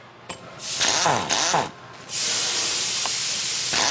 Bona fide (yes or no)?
yes